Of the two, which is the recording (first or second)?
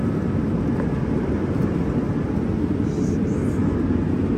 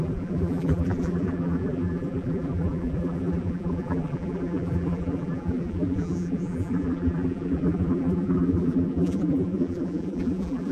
first